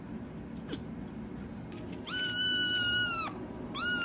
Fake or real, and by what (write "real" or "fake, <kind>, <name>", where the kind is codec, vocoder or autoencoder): real